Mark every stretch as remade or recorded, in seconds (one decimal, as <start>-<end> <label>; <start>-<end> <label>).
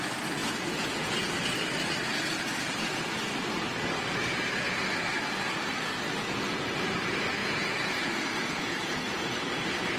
0.0-0.4 recorded; 0.4-1.1 remade; 1.1-7.4 recorded; 7.4-9.4 remade; 9.4-10.0 recorded